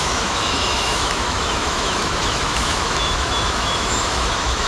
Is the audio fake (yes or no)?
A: yes